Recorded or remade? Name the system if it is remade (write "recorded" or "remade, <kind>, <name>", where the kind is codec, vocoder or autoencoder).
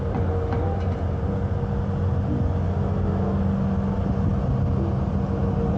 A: recorded